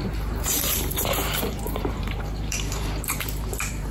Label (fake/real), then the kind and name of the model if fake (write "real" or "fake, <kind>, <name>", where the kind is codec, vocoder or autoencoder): fake, vocoder, BigVGAN v2